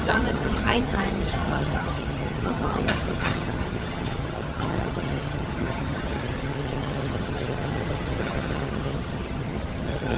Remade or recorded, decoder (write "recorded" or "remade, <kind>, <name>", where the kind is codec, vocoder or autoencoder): remade, vocoder, HiFi-GAN